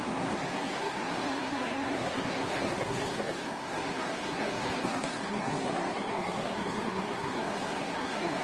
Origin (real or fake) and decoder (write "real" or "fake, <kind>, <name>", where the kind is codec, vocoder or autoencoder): fake, codec, SNAC